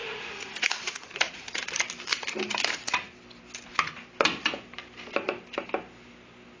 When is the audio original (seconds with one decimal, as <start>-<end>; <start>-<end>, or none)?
1.7-6.6